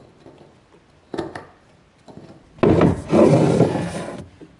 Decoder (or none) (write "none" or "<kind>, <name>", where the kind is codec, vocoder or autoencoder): none